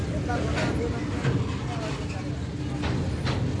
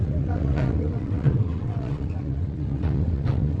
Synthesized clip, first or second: second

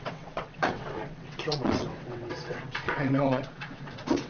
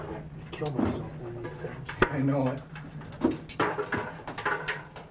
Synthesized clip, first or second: first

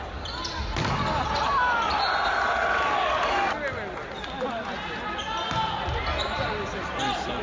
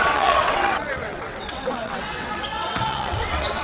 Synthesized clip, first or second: second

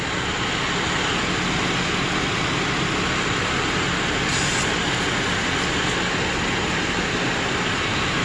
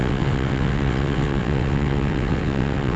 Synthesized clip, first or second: second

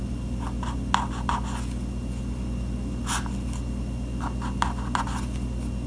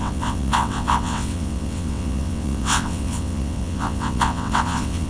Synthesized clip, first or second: second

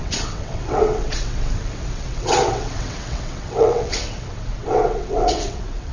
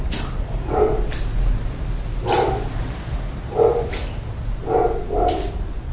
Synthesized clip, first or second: first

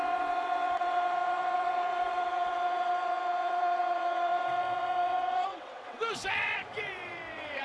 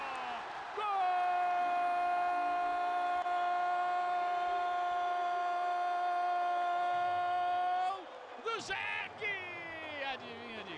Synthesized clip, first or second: first